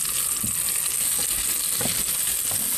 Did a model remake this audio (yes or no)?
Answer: no